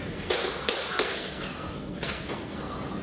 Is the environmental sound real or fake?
fake